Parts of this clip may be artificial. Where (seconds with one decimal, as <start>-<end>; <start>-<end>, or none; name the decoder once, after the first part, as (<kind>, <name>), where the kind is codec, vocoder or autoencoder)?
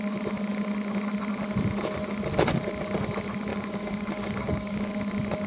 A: 3.5-4.9 (codec, DAC)